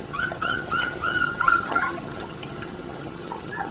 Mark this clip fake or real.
fake